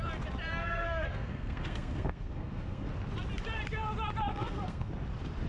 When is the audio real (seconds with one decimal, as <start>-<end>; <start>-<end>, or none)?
0.0-0.6; 2.9-4.3; 4.9-5.5